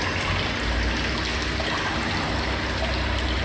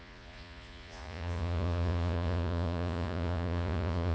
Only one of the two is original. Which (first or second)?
first